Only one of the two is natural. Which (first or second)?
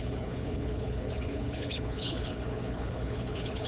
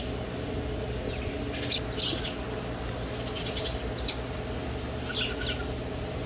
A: second